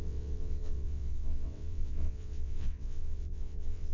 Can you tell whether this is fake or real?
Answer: fake